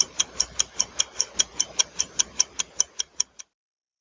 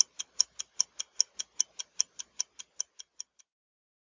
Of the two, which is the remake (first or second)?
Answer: first